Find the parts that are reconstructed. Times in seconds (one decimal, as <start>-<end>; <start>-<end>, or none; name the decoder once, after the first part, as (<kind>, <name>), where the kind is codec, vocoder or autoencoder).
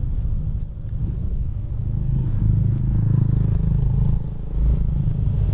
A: 1.0-2.4 (codec, SNAC)